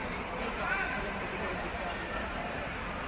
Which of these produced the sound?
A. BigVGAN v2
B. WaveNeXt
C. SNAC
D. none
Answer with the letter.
A